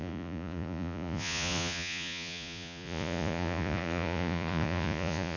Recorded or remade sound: remade